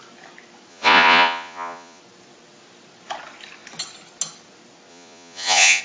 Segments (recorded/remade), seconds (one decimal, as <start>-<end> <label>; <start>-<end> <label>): 0.0-0.7 recorded; 0.7-2.0 remade; 2.0-4.9 recorded; 4.9-5.8 remade